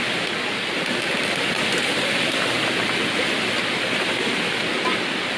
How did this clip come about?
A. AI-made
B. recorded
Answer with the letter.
B